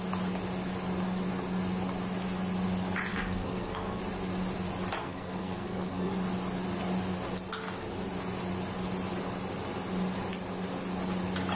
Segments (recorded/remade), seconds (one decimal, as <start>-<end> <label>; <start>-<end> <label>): 0.0-3.1 recorded; 3.1-4.0 remade; 4.0-5.0 recorded; 5.0-6.1 remade; 6.1-11.6 recorded